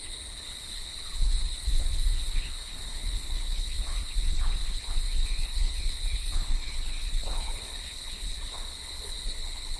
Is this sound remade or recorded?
remade